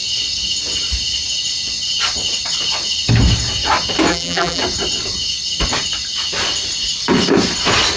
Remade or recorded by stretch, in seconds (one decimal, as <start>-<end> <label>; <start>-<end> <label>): 0.0-4.1 recorded; 4.1-4.6 remade; 4.6-8.0 recorded